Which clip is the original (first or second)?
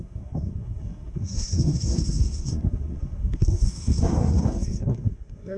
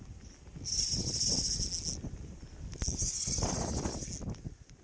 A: second